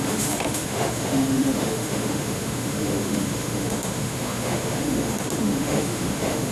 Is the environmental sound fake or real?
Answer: fake